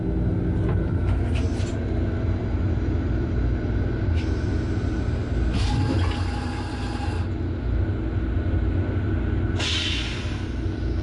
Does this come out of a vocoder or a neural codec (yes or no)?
no